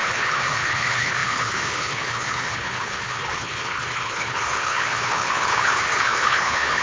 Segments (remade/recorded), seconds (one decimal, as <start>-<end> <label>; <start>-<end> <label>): 0.0-6.8 remade